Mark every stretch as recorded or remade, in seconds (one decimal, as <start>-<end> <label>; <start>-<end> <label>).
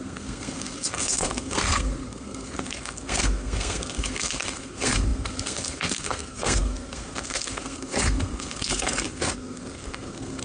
0.0-10.4 remade